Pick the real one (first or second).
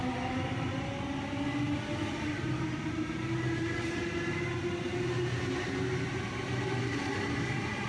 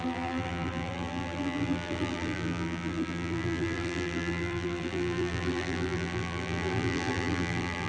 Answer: first